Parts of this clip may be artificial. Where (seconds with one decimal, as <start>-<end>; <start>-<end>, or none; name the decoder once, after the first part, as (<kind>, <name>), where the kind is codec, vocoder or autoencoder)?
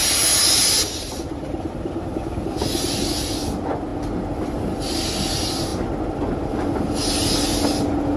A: 0.0-1.7 (vocoder, BigVGAN v2)